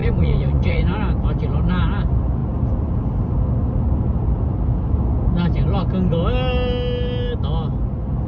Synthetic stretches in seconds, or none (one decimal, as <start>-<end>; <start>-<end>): 0.0-0.8